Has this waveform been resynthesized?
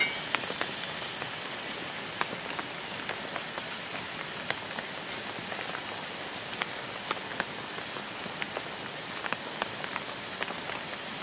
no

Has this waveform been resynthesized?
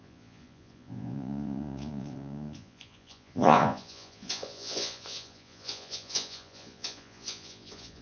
yes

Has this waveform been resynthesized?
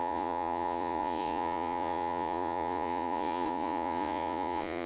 yes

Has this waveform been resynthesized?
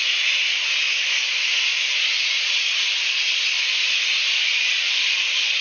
no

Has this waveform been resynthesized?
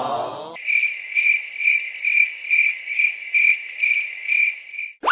no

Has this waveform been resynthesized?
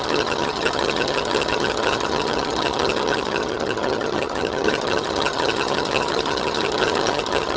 yes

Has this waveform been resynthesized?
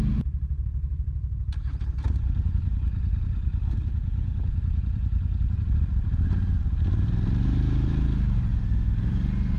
yes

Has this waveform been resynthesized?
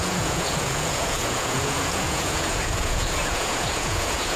yes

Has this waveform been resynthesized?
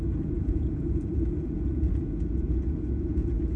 yes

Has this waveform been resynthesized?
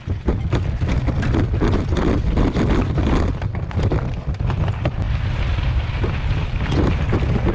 yes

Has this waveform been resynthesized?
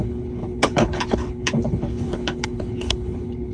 yes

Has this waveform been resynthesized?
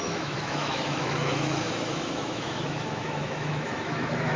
yes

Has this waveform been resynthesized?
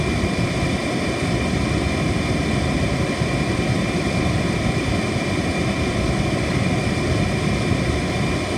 no